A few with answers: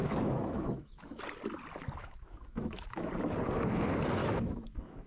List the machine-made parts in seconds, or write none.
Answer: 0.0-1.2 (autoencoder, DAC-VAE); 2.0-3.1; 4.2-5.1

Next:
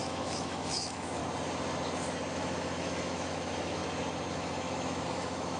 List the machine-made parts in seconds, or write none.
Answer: 0.0-1.2 (autoencoder, DAC-VAE); 2.3-3.8; 4.3-5.6